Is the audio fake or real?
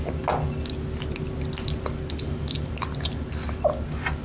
real